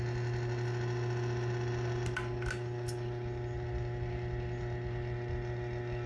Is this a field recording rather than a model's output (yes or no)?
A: yes